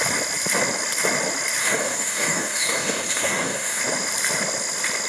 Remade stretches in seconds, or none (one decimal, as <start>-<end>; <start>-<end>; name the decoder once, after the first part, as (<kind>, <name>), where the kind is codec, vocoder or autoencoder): 1.6-3.8 (codec, DAC)